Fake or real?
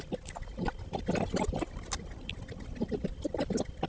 real